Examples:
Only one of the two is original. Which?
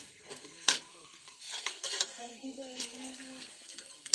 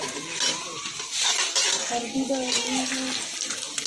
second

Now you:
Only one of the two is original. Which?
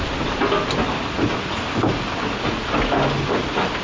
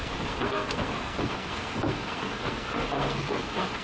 first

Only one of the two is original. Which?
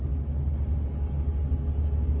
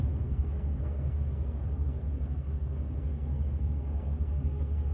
first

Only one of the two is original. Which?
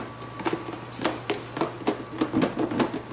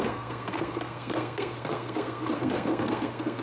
first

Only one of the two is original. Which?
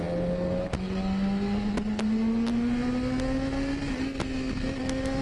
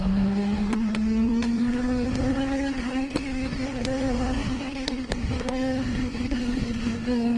first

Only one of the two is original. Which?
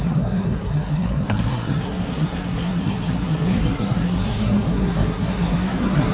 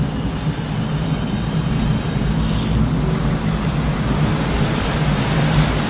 second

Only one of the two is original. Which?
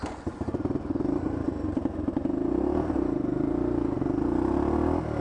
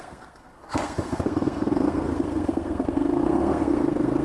first